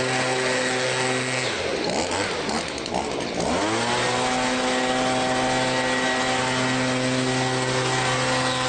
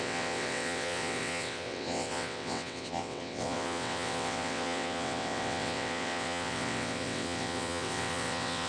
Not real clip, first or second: second